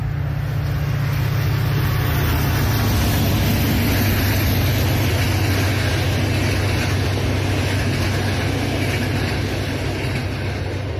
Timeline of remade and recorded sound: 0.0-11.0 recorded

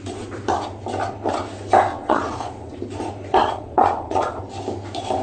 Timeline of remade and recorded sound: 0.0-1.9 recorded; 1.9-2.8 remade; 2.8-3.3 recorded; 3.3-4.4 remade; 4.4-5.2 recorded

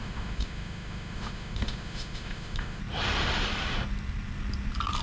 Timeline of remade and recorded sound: 0.0-2.8 remade; 2.8-5.0 recorded

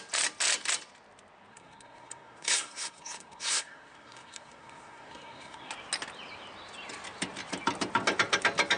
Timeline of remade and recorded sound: 0.0-1.5 recorded; 1.5-5.7 remade; 5.7-8.8 recorded